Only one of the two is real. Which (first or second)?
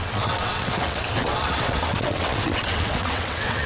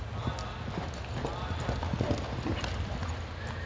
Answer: second